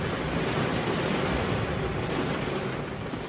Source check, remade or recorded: recorded